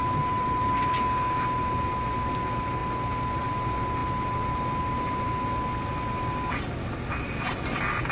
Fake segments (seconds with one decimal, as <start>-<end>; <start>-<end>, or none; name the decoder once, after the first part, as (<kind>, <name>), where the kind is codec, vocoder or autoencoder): none